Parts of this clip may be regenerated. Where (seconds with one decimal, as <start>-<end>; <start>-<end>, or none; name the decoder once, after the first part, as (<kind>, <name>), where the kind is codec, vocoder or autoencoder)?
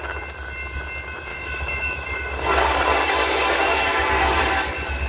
1.3-4.4 (codec, DAC)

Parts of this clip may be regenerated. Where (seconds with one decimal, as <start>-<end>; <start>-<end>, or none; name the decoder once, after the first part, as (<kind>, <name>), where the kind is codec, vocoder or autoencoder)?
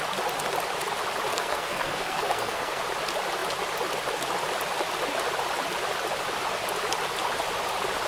1.3-2.8 (codec, SNAC)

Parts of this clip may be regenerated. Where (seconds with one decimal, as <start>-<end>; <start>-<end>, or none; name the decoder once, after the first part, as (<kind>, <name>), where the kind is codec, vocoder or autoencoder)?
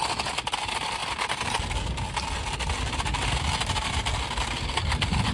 none